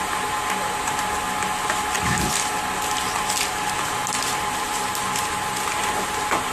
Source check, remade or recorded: recorded